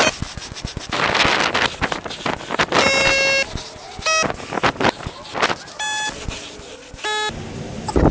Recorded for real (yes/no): yes